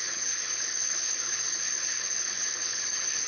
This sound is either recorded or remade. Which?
remade